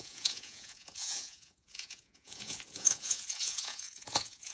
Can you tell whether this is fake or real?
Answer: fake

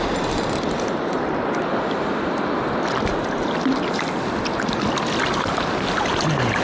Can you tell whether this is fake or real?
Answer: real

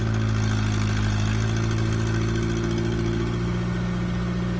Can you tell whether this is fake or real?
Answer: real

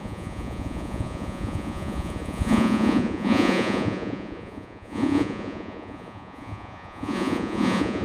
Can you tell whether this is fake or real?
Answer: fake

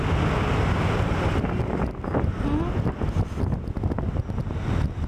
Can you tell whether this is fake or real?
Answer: real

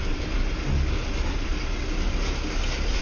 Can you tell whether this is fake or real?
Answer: real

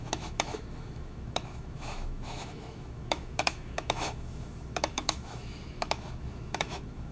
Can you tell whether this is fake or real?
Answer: fake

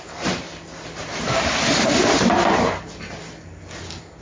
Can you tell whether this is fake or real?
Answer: real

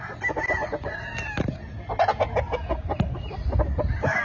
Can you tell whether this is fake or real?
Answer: real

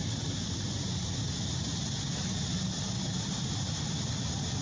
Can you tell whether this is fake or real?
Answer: real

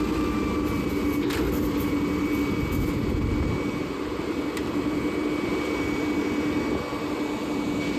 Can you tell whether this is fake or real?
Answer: real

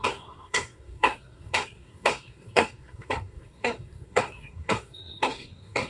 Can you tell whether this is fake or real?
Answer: fake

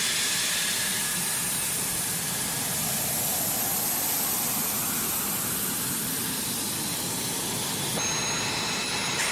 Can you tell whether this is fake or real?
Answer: real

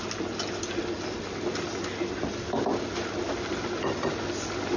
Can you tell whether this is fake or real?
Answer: real